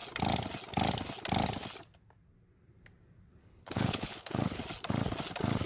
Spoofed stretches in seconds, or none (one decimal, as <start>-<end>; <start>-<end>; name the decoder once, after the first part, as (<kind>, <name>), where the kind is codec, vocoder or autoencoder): 3.4-4.6 (codec, HILCodec)